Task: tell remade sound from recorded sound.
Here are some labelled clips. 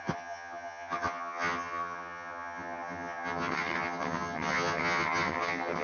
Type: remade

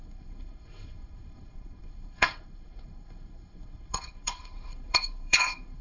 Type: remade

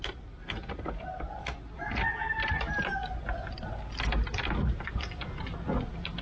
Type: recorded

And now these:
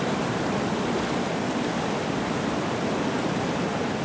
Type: recorded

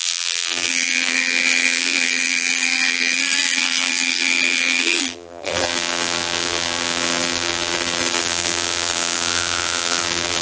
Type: remade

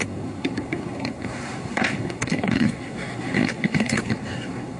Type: remade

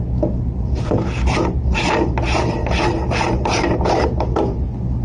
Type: recorded